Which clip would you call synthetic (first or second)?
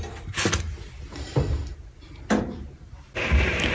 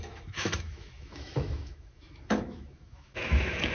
second